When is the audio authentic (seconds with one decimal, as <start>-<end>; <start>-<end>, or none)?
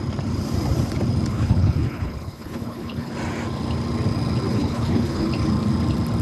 0.0-1.3; 3.1-4.5; 5.3-6.2